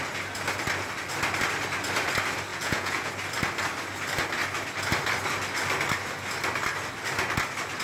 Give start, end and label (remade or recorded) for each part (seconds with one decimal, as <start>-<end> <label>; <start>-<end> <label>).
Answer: 0.0-2.5 recorded; 2.5-3.1 remade; 3.1-7.8 recorded